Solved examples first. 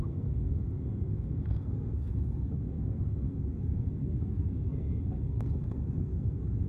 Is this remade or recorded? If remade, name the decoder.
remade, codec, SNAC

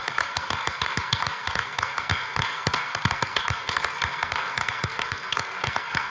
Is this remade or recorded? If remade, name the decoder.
remade, codec, SNAC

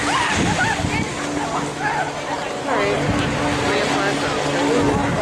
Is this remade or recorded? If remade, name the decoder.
recorded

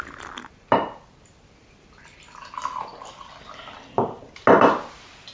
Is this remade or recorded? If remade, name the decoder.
recorded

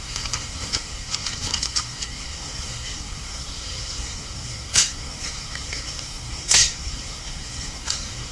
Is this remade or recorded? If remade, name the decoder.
remade, codec, SNAC